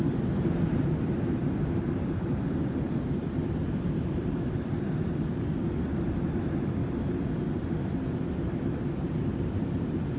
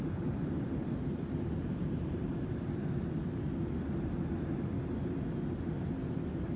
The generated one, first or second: first